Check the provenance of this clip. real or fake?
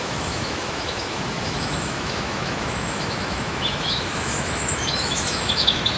fake